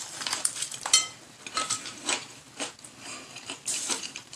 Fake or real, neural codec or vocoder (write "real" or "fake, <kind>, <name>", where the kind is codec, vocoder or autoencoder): fake, vocoder, BigVGAN v2